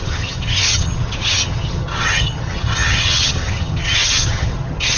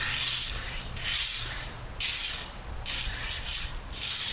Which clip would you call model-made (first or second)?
first